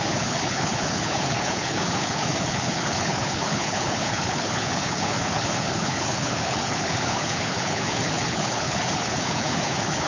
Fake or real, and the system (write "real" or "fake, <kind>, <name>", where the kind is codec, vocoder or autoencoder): fake, codec, HILCodec